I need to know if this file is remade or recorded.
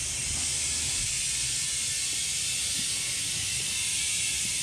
recorded